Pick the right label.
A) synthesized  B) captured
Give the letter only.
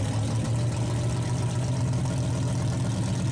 B